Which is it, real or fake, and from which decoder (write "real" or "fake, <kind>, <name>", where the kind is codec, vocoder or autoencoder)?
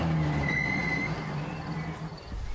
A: real